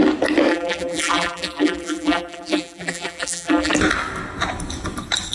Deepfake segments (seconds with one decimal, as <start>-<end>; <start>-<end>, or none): 0.5-3.7